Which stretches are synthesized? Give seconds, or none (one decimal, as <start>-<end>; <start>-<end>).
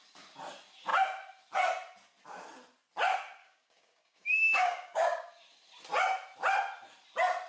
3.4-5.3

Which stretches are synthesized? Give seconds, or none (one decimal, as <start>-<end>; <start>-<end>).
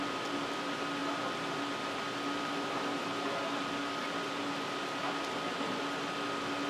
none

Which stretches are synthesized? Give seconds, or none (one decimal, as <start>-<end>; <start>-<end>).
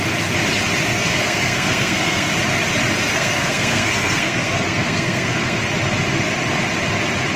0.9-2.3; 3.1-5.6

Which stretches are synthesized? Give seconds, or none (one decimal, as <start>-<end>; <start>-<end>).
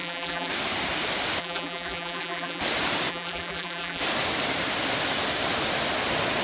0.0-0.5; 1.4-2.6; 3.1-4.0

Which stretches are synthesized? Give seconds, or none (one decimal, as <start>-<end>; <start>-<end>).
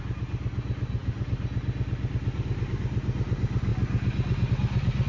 none